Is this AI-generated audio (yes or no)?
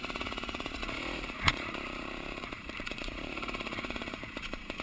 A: yes